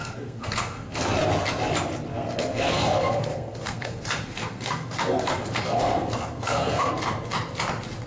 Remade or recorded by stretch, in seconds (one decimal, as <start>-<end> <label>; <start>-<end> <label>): 0.0-1.1 remade; 1.1-2.1 recorded; 2.1-6.9 remade; 6.9-8.1 recorded